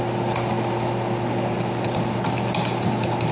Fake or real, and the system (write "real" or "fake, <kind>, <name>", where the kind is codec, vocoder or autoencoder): real